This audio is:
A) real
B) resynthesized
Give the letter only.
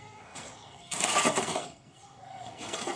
B